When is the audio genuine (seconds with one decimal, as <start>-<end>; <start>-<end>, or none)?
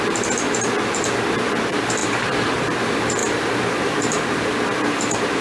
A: none